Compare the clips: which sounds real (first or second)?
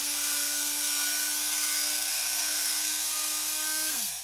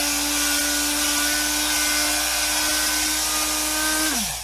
second